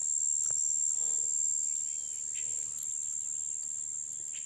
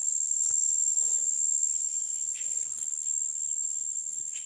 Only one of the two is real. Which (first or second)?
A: first